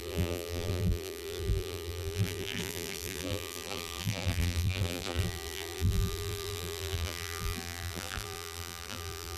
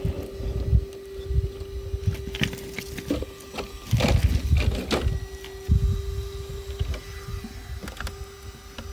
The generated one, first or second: first